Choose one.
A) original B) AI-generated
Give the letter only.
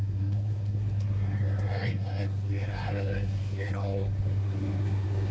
B